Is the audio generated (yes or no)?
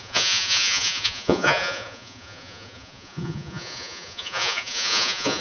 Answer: yes